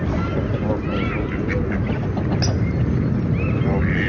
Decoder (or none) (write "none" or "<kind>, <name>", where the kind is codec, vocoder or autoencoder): none